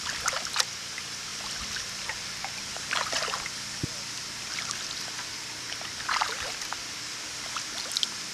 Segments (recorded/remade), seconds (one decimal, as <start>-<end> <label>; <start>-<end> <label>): 0.0-8.3 recorded

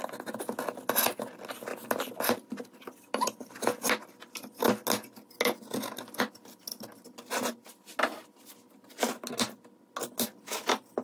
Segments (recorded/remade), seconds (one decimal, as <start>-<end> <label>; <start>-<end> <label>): 0.0-1.7 recorded; 1.7-4.6 remade; 4.6-11.0 recorded

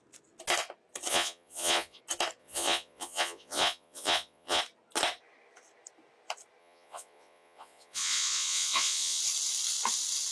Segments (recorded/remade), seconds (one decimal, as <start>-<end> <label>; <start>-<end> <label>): 0.0-1.1 recorded; 1.1-2.0 remade; 2.0-2.4 recorded; 2.4-4.6 remade; 4.6-6.6 recorded; 6.6-9.2 remade; 9.2-10.3 recorded

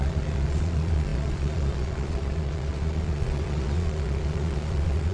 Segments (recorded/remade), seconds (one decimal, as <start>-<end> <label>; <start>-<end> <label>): 0.0-5.1 remade

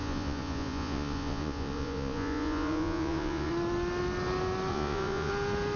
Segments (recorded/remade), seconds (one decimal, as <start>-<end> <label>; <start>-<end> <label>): 0.0-3.5 remade; 3.5-4.7 recorded; 4.7-5.3 remade; 5.3-5.8 recorded

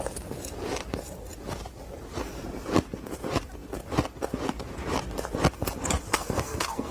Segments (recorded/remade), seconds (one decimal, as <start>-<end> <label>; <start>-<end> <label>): 0.0-6.1 recorded; 6.1-6.9 remade

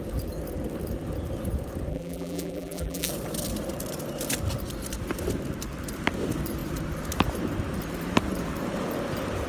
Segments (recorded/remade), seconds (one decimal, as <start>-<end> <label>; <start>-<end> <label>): 0.0-1.9 recorded; 1.9-3.1 remade; 3.1-9.5 recorded

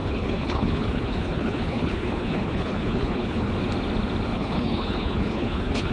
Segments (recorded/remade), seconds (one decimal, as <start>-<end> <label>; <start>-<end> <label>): 0.0-3.5 remade; 3.5-4.3 recorded; 4.3-5.9 remade